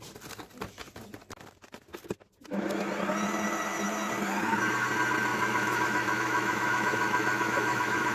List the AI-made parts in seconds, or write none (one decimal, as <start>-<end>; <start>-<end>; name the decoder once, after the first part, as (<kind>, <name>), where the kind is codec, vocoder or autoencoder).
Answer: 5.3-8.1 (autoencoder, DAC-VAE)